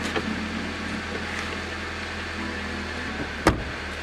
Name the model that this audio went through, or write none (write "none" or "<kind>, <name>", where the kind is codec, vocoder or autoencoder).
none